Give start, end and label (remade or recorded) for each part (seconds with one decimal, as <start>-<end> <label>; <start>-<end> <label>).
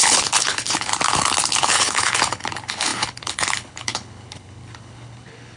0.0-0.9 remade; 0.9-1.6 recorded; 1.6-5.6 remade